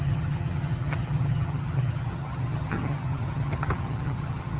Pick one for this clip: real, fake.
fake